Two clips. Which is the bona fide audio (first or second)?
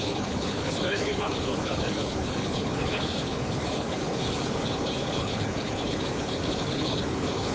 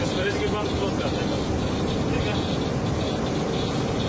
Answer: second